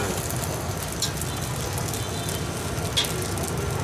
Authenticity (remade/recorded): recorded